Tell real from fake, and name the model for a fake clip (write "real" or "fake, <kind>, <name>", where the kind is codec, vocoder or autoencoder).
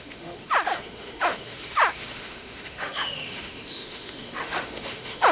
fake, autoencoder, DAC-VAE